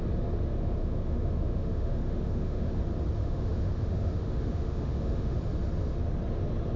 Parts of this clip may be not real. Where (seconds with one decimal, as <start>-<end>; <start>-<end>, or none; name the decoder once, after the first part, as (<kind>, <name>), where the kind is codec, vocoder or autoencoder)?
0.6-2.8 (autoencoder, DAC-VAE); 3.2-5.4